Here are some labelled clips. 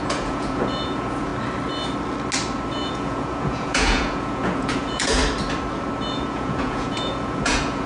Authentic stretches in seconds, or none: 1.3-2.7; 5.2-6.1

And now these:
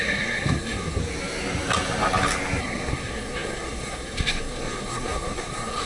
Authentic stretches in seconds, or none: 1.0-2.6

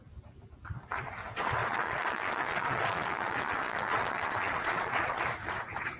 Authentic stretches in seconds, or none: 0.0-1.6; 5.2-6.0

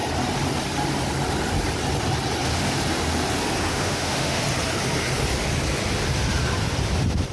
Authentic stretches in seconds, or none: 0.0-3.7; 4.4-7.3

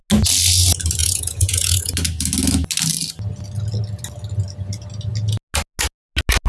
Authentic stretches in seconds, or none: 0.0-1.0; 1.9-6.5

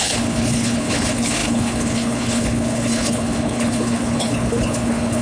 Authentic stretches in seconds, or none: none

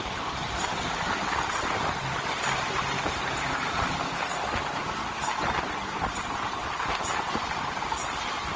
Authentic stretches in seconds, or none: 0.0-8.6

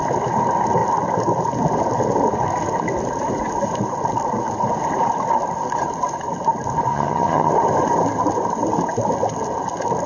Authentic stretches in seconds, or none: 0.0-6.9; 7.5-10.1